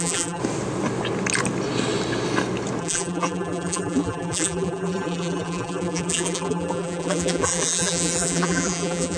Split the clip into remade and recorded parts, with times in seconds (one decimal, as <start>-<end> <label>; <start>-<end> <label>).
0.0-0.4 remade; 0.4-2.8 recorded; 2.8-9.2 remade